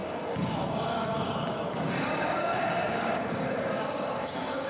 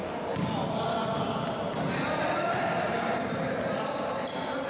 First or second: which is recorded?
second